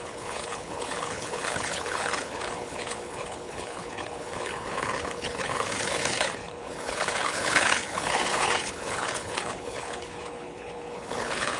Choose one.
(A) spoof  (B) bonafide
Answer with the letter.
A